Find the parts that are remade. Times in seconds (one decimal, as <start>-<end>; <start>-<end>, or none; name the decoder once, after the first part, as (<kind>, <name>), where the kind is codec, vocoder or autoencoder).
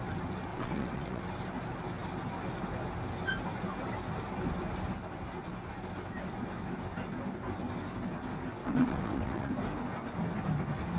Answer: 0.5-1.2 (vocoder, WaveNeXt); 8.6-9.5